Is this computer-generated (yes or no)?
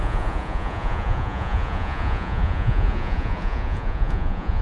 yes